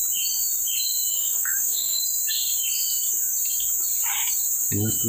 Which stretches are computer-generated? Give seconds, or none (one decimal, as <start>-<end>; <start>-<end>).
1.1-2.0